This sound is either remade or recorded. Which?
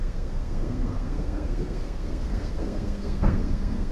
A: remade